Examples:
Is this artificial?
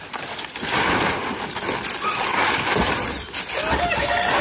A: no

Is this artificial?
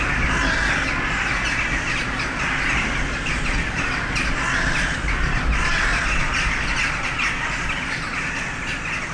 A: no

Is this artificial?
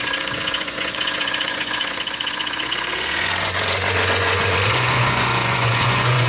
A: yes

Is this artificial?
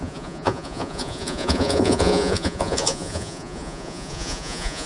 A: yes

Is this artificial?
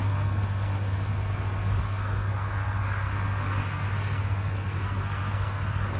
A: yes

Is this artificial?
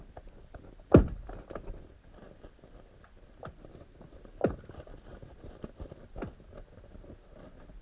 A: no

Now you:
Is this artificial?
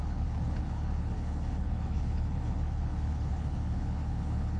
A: yes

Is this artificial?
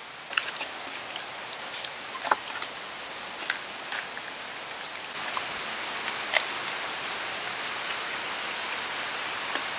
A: no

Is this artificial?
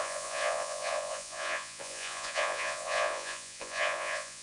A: yes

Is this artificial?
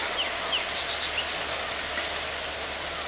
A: no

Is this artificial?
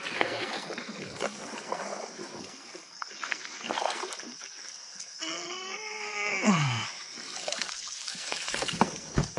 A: yes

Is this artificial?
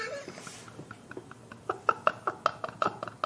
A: no